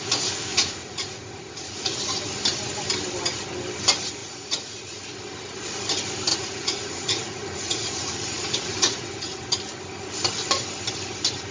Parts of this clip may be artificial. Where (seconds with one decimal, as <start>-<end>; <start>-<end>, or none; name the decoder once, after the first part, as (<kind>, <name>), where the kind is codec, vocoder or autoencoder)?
0.5-2.0 (vocoder, Vocos); 4.2-5.0; 6.3-9.4